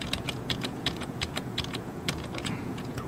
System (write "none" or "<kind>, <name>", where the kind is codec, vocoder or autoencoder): vocoder, Vocos